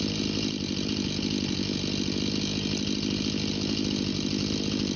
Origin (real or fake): real